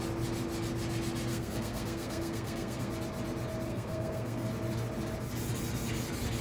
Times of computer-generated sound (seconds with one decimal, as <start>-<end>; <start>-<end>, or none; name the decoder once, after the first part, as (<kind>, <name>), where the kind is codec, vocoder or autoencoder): 1.3-2.9 (codec, SNAC); 3.7-4.5